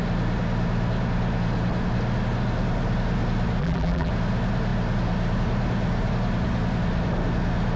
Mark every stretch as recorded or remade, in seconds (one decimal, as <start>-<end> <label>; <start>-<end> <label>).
0.0-3.6 recorded; 3.6-4.1 remade; 4.1-7.8 recorded